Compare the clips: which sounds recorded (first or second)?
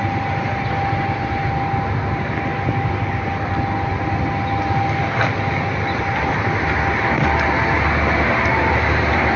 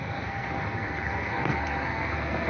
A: first